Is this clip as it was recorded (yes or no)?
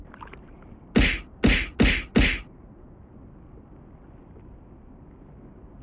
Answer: yes